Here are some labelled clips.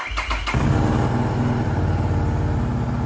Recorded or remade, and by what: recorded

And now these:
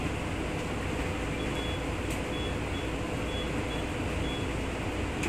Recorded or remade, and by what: recorded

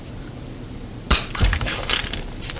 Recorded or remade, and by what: recorded